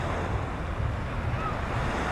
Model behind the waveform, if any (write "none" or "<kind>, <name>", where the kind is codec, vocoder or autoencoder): none